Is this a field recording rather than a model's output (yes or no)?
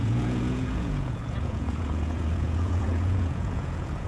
no